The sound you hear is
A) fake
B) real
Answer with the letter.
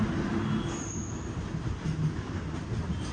B